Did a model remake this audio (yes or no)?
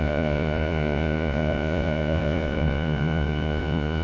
yes